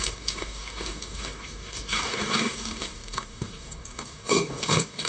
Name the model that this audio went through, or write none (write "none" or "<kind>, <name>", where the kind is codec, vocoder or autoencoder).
codec, DAC